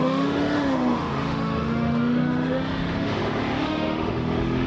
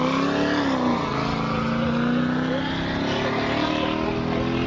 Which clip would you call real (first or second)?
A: second